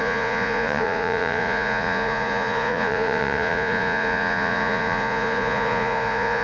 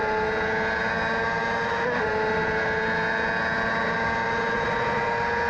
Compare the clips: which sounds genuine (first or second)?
second